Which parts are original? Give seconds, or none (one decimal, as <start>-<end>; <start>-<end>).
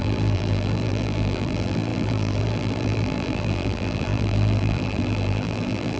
none